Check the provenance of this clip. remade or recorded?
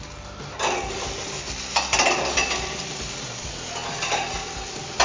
recorded